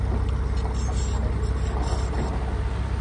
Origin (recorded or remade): recorded